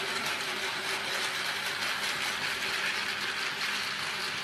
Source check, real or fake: real